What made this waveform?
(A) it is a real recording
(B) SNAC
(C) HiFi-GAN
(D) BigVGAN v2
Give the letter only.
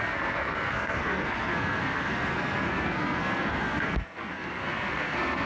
B